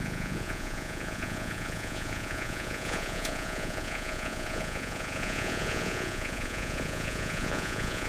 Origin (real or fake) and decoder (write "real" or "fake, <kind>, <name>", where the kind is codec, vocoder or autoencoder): fake, vocoder, Vocos